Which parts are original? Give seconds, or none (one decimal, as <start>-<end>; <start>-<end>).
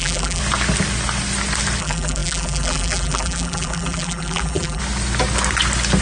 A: 0.4-1.8; 4.8-6.0